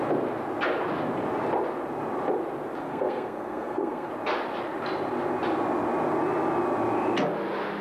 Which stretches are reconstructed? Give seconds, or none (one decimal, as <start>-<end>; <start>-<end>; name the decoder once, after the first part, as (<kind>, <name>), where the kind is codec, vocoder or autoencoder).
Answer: 2.8-4.1 (codec, SNAC)